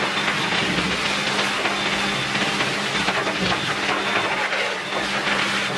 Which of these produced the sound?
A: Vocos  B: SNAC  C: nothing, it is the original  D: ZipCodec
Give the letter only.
C